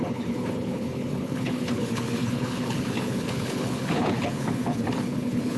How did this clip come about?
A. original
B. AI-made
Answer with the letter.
B